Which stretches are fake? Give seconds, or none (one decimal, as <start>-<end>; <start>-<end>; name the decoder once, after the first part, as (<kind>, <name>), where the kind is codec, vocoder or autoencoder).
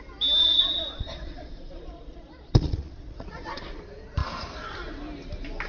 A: 0.4-3.8 (vocoder, Vocos)